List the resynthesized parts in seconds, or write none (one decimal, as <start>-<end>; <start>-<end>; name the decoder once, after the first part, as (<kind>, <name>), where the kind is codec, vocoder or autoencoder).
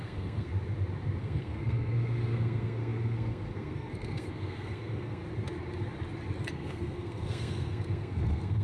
0.0-0.5 (codec, SNAC); 1.2-5.2; 6.5-8.6